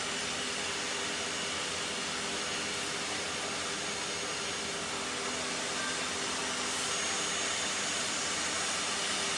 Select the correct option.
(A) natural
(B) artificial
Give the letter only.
A